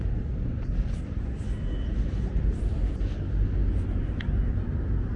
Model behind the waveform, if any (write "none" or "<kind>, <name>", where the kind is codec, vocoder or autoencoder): none